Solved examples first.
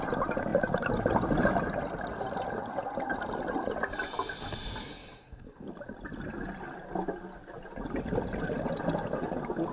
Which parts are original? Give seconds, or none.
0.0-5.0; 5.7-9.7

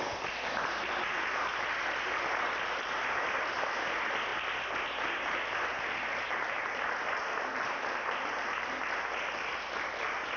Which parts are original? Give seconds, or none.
0.0-10.4

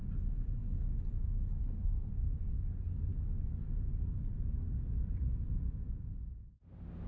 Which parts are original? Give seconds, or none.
0.0-1.6; 2.1-7.1

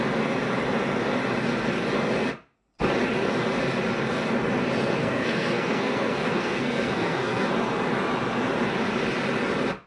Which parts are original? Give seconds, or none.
0.0-5.0; 7.5-9.9

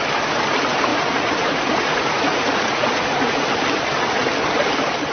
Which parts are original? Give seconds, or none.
0.0-0.9; 3.5-5.1

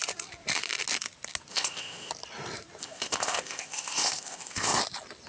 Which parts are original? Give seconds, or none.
0.0-1.5; 2.1-2.8; 4.8-5.3

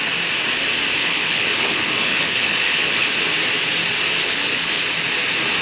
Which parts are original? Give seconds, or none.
0.0-1.0; 3.1-4.2; 4.9-5.6